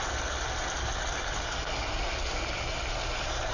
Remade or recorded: recorded